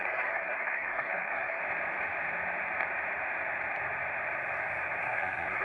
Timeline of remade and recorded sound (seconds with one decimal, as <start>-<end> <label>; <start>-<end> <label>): 0.0-1.6 remade; 1.6-5.0 recorded; 5.0-5.6 remade